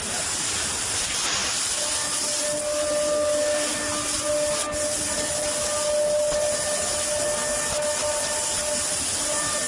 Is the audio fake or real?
real